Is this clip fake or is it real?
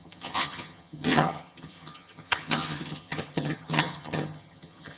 fake